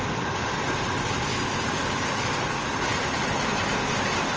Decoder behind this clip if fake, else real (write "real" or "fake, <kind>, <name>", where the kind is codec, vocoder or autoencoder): real